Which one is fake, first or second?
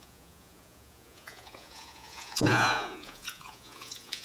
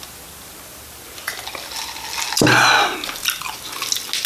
first